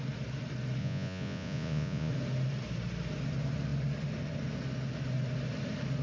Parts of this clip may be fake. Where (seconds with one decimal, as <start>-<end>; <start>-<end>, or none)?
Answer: 0.8-2.1